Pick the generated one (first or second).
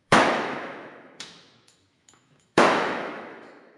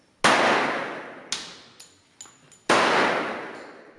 first